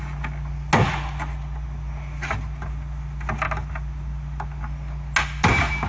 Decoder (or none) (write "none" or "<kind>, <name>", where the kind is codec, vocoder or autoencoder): none